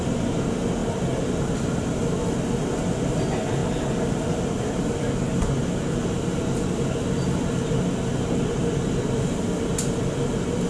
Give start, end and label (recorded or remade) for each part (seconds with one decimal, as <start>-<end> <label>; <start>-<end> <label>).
0.0-10.7 recorded